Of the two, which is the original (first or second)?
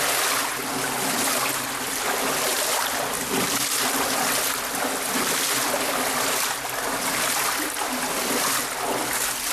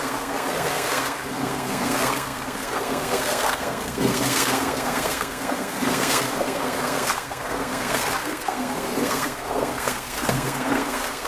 first